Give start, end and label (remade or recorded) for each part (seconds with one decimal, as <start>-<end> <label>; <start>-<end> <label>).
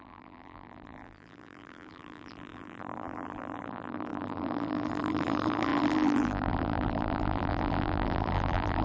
0.0-8.8 remade